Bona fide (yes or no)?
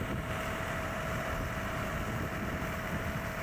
no